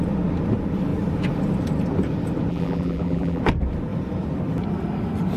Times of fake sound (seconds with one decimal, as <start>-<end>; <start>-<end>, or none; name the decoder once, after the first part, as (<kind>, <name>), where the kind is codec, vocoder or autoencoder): 2.5-3.4 (vocoder, BigVGAN v2)